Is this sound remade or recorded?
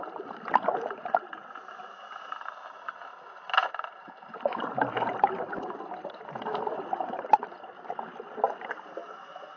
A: recorded